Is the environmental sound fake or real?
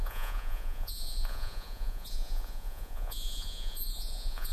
fake